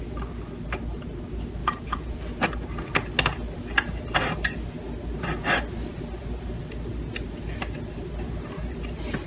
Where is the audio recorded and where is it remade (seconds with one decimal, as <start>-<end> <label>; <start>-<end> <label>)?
0.0-1.6 recorded; 1.6-2.2 remade; 2.2-9.3 recorded